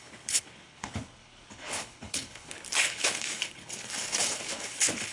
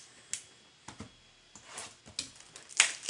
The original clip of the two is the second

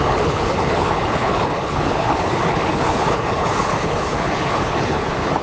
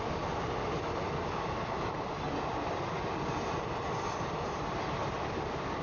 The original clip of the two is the second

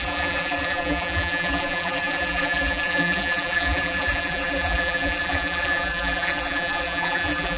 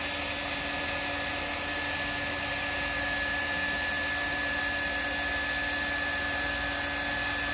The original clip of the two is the second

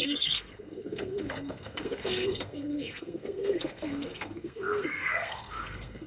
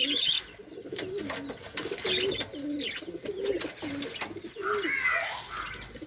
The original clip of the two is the second